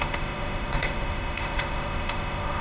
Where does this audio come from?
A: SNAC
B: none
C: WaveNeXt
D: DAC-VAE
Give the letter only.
D